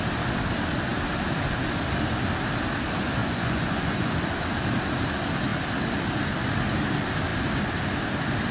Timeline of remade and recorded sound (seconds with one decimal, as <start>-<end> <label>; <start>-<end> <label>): 0.0-3.2 recorded; 3.2-4.1 remade; 4.1-8.5 recorded